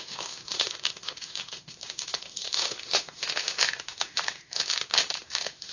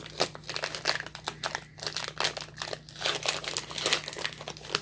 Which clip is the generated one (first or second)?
first